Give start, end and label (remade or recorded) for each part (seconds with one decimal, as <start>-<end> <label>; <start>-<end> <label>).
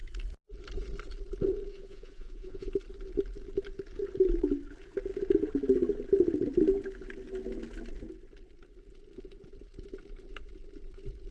0.0-1.7 recorded; 1.7-2.7 remade; 2.7-11.3 recorded